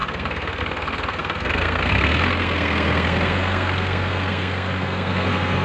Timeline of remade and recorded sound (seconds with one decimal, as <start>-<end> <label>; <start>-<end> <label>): 0.0-5.6 remade

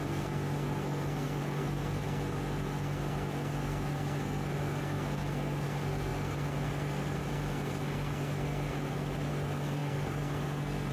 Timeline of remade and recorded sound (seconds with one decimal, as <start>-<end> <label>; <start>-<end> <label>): 0.0-10.9 remade

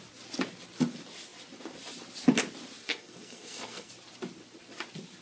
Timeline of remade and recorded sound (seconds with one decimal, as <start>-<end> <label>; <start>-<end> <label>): 0.0-2.8 recorded; 2.8-3.9 remade; 3.9-5.2 recorded

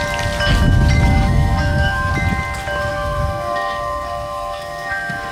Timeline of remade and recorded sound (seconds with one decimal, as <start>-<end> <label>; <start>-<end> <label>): 0.0-1.1 recorded; 1.1-2.1 remade; 2.1-2.9 recorded; 2.9-5.3 remade

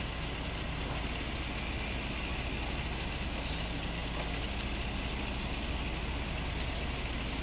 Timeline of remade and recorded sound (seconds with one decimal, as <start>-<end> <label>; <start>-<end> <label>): 0.0-7.4 recorded

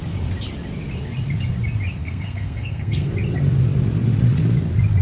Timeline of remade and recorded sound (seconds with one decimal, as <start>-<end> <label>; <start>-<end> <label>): 0.0-2.0 recorded; 2.0-3.1 remade; 3.1-5.0 recorded